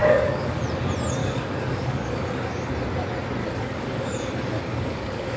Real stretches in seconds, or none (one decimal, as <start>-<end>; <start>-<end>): 0.6-1.2; 2.7-3.4